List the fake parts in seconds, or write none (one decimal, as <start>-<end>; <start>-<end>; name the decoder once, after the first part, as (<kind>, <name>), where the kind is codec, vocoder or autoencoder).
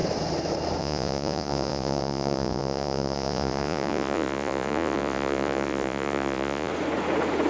0.8-6.7 (vocoder, Vocos)